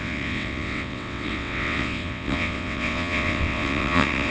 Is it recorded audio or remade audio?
remade